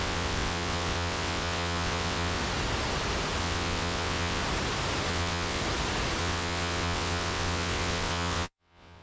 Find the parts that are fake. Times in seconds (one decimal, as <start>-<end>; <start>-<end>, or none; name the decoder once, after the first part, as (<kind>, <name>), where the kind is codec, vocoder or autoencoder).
0.0-2.4 (vocoder, WaveNeXt); 3.4-4.4; 5.1-5.6; 6.2-9.0